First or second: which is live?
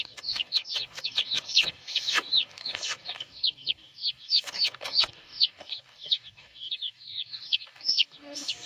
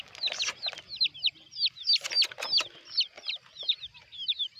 second